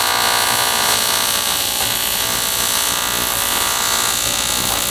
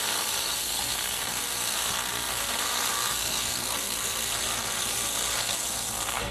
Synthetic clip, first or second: second